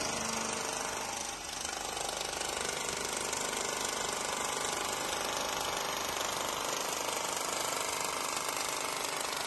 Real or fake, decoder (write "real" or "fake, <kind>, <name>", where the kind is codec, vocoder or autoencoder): real